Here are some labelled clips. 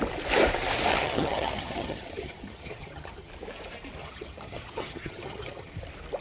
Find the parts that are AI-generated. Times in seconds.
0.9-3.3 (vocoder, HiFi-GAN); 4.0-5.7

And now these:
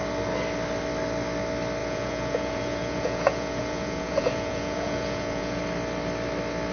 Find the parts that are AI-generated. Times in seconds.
1.8-5.6 (vocoder, Vocos)